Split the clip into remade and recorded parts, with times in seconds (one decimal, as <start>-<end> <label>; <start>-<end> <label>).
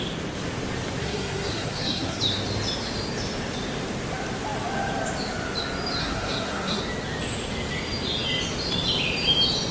0.0-1.0 recorded; 1.0-2.2 remade; 2.2-6.0 recorded; 6.0-6.8 remade; 6.8-9.7 recorded